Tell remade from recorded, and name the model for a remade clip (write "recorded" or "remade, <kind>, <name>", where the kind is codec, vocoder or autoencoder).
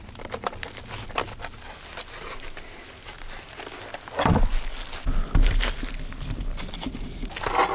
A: recorded